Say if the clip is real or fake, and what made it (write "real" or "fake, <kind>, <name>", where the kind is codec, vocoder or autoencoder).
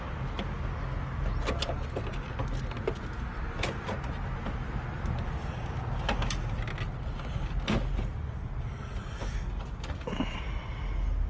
real